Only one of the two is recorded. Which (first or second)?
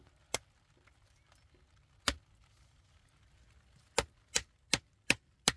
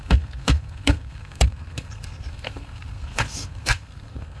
first